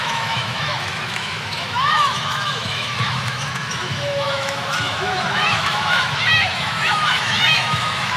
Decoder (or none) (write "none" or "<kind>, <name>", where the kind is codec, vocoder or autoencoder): autoencoder, DAC-VAE